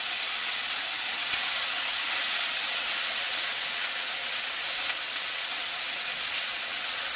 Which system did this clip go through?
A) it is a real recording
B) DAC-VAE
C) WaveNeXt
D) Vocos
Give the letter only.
C